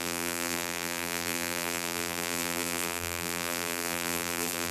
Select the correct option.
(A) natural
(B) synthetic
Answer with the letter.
B